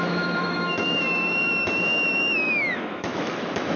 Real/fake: fake